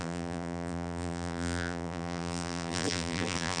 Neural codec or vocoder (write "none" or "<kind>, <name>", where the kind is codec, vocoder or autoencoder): vocoder, BigVGAN v2